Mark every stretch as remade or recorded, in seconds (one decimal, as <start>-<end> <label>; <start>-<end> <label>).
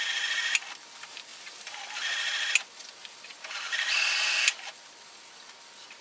0.0-6.0 recorded